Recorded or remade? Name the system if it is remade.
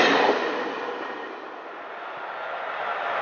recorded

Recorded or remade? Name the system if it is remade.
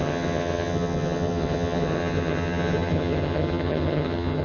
remade, vocoder, HiFi-GAN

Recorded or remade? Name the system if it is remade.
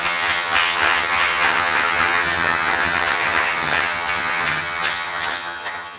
remade, vocoder, HiFi-GAN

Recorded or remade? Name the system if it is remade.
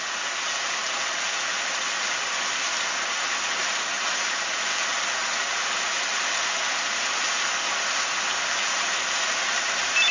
recorded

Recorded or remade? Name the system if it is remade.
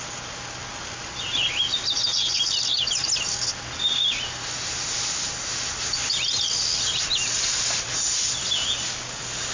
recorded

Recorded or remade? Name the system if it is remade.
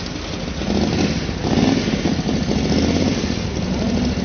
recorded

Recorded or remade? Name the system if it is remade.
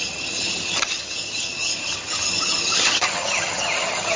remade, vocoder, HiFi-GAN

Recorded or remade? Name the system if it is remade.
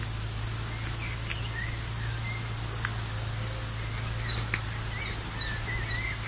recorded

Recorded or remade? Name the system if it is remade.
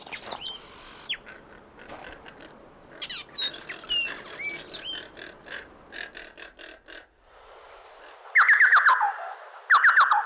recorded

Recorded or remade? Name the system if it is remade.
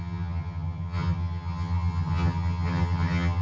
remade, vocoder, HiFi-GAN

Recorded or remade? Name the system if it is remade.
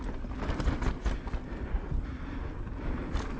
recorded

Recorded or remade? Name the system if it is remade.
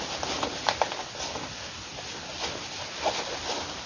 recorded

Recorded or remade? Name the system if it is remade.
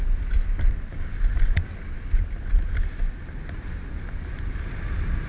recorded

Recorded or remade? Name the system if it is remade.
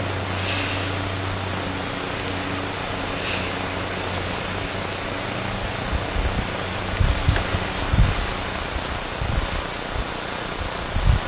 recorded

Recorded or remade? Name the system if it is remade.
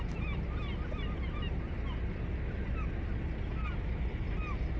recorded